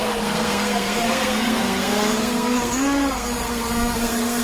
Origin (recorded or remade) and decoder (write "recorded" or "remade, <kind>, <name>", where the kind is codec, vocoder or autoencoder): remade, codec, SNAC